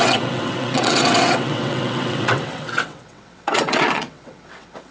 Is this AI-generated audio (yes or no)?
yes